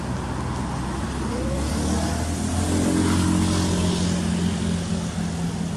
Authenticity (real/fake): real